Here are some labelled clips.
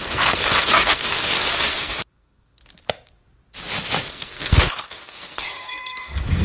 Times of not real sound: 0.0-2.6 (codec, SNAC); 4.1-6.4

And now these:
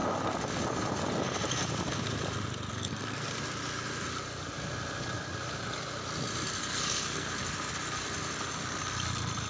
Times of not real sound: 2.7-3.3 (codec, SNAC); 6.6-7.4